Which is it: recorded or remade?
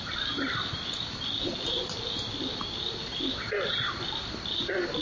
recorded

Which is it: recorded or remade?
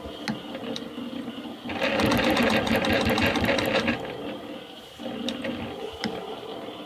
recorded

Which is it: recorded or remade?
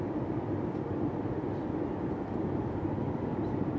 recorded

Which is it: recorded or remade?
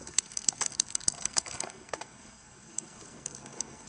remade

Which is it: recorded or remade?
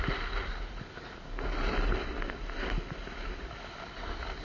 recorded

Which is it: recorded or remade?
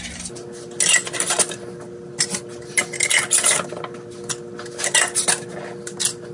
recorded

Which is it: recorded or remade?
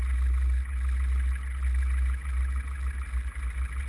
recorded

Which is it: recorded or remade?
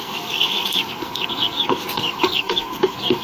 remade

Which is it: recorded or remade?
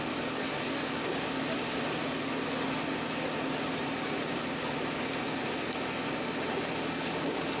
recorded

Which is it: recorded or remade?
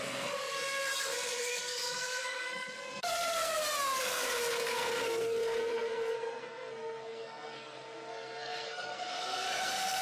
remade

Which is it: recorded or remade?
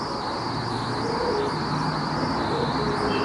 recorded